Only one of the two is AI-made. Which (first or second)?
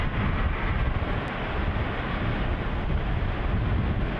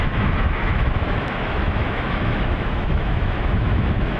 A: second